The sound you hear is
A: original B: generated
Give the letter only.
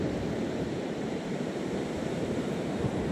B